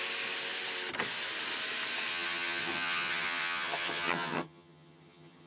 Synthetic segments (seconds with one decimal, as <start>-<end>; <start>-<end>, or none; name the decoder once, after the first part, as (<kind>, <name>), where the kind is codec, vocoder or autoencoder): 2.1-5.5 (vocoder, HiFi-GAN)

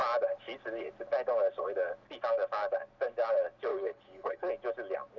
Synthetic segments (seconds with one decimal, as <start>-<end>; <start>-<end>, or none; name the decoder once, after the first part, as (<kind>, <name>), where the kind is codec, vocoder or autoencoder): 3.7-4.5 (codec, HILCodec)

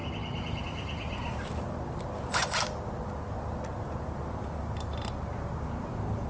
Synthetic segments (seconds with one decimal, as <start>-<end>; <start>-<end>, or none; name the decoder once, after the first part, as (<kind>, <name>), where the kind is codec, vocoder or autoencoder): none

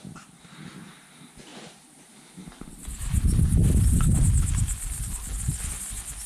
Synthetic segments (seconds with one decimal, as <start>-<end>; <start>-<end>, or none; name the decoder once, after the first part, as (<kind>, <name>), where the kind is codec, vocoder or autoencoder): 1.5-4.5 (vocoder, BigVGAN v2)

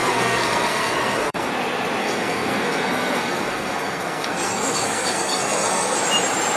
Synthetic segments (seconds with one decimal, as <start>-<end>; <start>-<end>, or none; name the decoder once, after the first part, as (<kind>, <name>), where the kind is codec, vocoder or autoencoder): 0.0-1.5 (codec, SNAC); 2.0-6.0

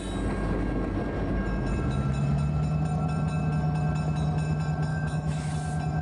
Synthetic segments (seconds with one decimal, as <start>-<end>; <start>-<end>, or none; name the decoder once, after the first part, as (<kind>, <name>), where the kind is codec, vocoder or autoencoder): 4.9-5.5 (autoencoder, DAC-VAE)

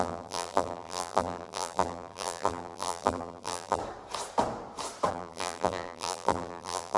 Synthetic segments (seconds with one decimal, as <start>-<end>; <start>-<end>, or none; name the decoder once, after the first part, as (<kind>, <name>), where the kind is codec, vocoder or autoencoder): 0.0-3.8 (vocoder, BigVGAN v2); 5.1-7.0